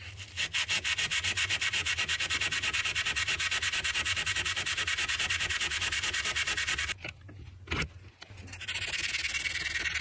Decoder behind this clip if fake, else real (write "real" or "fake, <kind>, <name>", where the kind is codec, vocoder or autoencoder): real